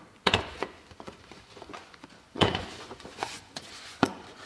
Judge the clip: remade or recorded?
remade